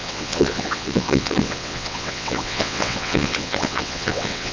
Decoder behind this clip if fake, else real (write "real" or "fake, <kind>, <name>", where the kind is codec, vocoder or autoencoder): fake, vocoder, WaveNeXt